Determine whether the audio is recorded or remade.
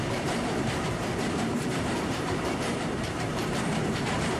remade